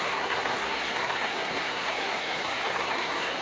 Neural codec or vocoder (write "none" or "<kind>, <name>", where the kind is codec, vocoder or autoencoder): codec, SNAC